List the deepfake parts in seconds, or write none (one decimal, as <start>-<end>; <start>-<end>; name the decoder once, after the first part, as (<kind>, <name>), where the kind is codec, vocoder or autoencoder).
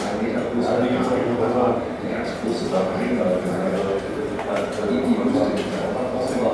none